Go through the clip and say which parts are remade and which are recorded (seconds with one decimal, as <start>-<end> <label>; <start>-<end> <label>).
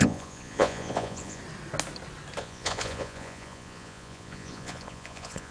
0.0-1.4 remade; 1.4-2.4 recorded; 2.4-5.5 remade